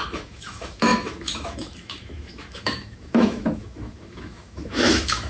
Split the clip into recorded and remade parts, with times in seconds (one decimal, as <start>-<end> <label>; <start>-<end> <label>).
0.0-5.3 remade